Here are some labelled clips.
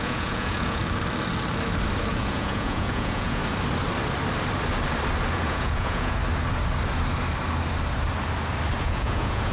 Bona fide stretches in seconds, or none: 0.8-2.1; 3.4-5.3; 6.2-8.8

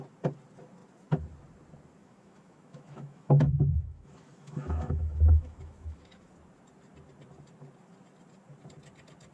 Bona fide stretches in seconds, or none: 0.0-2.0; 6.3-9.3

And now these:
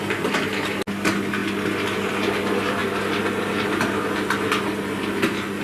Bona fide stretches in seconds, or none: 0.0-5.6

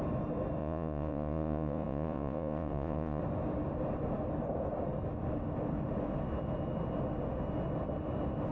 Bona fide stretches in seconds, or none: 0.0-0.6; 3.2-8.5